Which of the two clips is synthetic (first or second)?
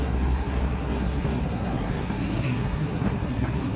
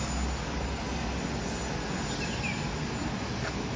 first